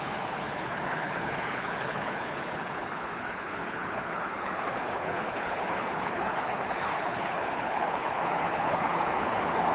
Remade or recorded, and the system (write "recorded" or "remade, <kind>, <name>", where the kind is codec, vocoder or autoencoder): remade, codec, HILCodec